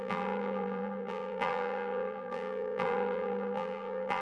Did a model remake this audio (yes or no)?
yes